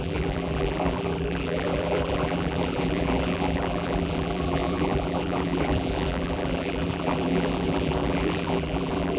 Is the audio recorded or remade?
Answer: remade